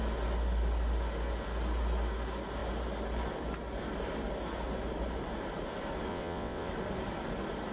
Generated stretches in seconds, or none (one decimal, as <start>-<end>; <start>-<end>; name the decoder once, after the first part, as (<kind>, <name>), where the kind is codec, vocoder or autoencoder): 6.1-6.7 (vocoder, WaveNeXt)